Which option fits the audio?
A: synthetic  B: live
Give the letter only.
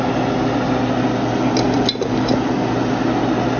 B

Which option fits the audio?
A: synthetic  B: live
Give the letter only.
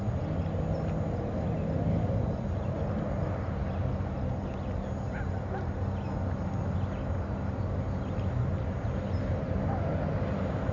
B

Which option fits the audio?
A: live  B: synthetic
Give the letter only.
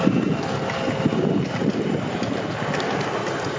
A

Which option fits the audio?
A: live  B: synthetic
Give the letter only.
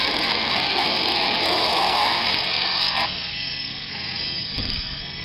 B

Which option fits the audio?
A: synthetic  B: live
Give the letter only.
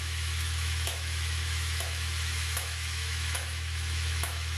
A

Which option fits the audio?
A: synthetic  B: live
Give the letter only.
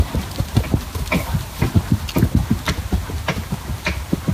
B